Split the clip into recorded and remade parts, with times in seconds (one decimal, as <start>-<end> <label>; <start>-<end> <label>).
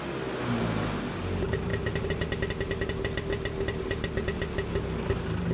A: 0.0-5.5 recorded